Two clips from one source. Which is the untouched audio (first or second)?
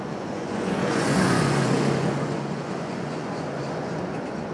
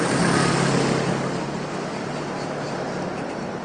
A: second